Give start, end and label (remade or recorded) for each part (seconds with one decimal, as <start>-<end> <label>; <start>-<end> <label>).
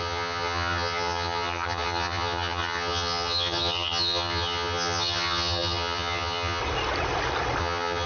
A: 0.0-6.6 remade; 6.6-7.6 recorded; 7.6-8.1 remade